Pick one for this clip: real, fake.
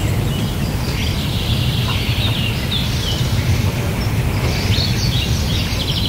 fake